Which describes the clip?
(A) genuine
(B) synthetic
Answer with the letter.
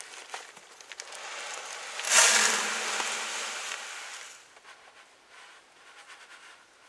A